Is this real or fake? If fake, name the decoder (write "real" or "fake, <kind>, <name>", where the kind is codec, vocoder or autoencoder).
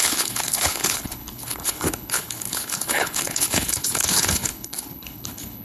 fake, codec, HILCodec